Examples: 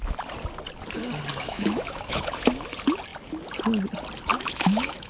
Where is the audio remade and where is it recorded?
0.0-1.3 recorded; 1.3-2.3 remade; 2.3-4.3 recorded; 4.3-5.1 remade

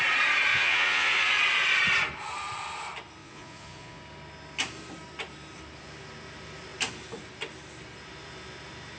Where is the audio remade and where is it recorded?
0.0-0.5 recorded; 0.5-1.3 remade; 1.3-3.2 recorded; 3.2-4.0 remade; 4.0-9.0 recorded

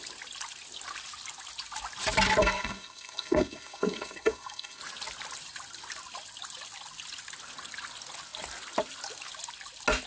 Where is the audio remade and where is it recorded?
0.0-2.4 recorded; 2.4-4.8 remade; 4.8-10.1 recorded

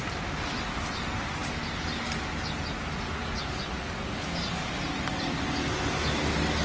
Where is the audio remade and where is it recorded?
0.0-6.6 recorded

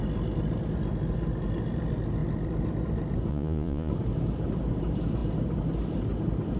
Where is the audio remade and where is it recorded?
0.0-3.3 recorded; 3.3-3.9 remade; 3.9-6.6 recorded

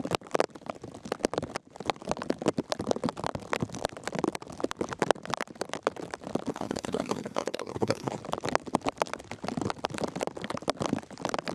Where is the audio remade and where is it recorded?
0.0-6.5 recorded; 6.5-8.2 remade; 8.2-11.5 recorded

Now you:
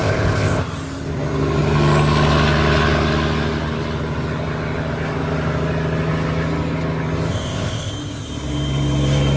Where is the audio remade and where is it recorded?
0.0-0.6 remade; 0.6-7.3 recorded; 7.3-7.9 remade; 7.9-9.4 recorded

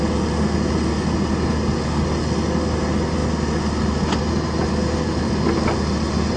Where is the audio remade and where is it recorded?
0.0-6.4 recorded